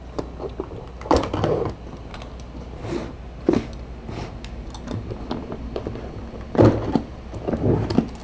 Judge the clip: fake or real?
real